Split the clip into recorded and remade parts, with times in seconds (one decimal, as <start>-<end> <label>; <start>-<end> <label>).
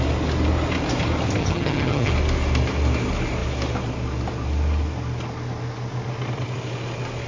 0.0-1.4 recorded; 1.4-2.1 remade; 2.1-7.3 recorded